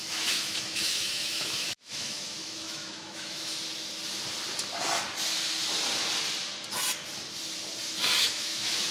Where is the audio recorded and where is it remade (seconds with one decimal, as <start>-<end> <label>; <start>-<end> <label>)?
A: 0.0-3.5 remade; 3.5-8.2 recorded; 8.2-8.9 remade